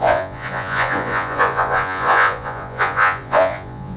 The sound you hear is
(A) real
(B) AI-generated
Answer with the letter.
B